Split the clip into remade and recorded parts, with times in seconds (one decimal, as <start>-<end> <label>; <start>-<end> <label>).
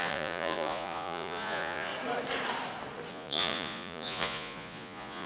0.0-1.9 remade; 1.9-3.1 recorded; 3.1-5.3 remade